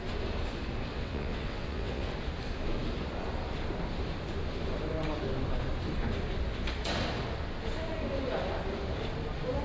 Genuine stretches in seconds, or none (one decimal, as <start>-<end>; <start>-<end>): 0.0-0.9; 2.1-9.6